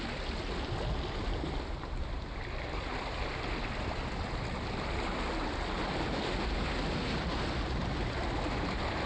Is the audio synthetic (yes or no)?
no